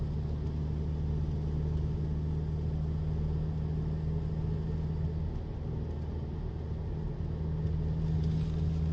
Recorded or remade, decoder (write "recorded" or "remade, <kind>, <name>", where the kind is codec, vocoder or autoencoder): recorded